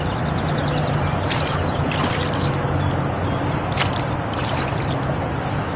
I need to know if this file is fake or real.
real